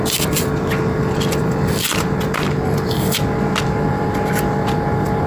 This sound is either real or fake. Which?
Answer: real